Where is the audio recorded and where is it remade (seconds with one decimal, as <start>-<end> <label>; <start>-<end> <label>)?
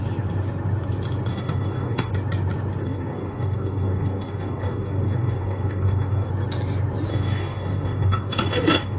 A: 0.0-1.3 recorded; 1.3-2.1 remade; 2.1-2.8 recorded; 2.8-6.3 remade; 6.3-7.1 recorded; 7.1-9.0 remade